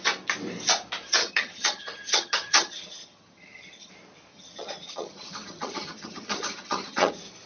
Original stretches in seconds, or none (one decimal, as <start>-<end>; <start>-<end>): 0.0-1.2; 3.9-4.3; 7.1-7.5